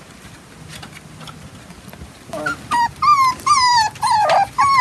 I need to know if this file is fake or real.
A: real